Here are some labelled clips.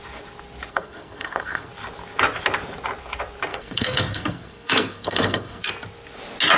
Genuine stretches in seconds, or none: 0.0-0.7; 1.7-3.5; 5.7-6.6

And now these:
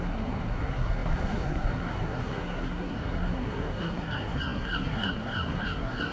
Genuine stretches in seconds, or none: none

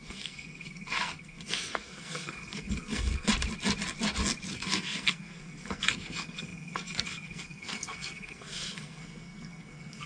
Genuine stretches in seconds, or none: 3.3-4.5

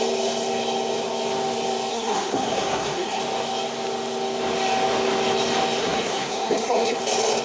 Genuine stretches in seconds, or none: 0.0-1.9; 3.2-5.8; 7.0-7.4

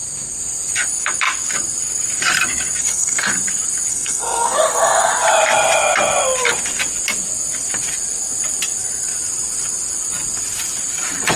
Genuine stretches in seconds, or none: 0.0-2.8; 3.3-3.9; 5.1-11.4

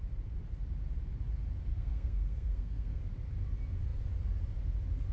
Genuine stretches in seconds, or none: 0.0-1.7; 3.0-5.1

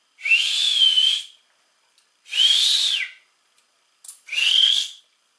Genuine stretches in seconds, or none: 0.0-4.4; 5.0-5.4